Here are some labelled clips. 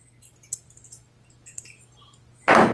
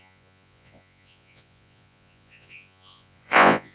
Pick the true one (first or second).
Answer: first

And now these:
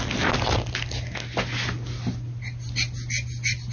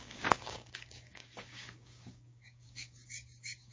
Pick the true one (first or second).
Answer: first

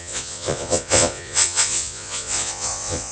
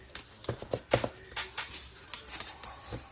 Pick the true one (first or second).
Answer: second